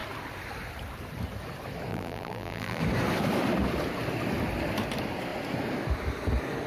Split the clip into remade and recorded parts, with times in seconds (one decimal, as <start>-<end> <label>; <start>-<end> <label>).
0.0-1.9 recorded; 1.9-2.8 remade; 2.8-6.7 recorded